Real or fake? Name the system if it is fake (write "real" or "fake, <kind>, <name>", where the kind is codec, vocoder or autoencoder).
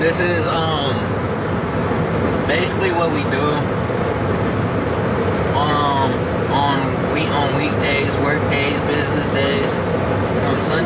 real